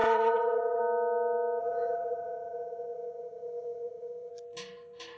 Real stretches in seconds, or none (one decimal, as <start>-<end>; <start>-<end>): 0.8-1.6; 4.3-5.2